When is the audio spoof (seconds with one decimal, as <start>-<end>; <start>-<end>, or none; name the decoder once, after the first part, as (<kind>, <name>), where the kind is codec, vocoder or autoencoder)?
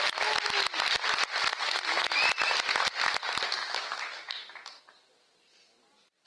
1.5-2.1 (autoencoder, DAC-VAE); 3.6-4.8